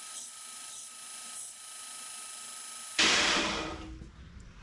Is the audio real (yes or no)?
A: yes